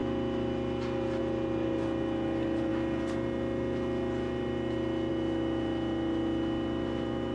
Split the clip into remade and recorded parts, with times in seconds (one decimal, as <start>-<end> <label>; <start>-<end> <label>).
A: 0.0-7.3 recorded